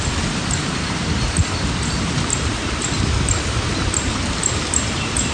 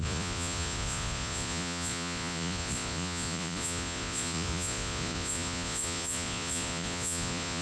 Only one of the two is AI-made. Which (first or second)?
second